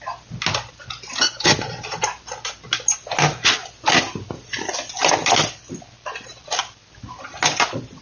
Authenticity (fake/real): real